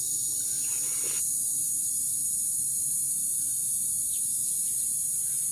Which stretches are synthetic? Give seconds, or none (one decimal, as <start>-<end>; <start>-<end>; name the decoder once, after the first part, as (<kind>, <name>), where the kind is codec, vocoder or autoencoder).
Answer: none